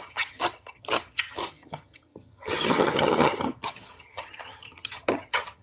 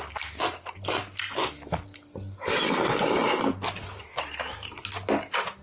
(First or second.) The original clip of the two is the second